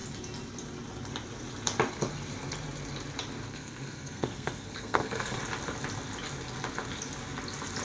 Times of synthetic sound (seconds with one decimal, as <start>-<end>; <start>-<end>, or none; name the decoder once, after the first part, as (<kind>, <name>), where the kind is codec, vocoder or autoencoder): 3.5-5.4 (codec, SNAC)